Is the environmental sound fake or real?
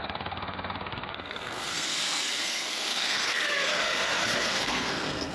fake